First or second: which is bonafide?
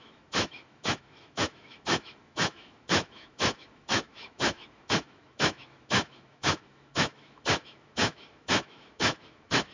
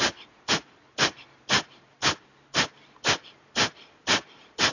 second